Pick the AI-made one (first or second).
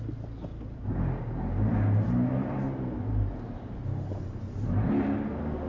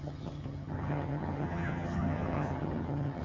second